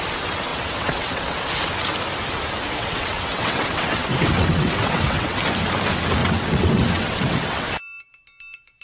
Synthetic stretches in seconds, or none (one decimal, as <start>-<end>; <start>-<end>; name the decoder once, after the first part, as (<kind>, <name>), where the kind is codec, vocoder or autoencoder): 0.5-1.4 (vocoder, WaveNeXt); 2.8-5.4; 6.2-7.7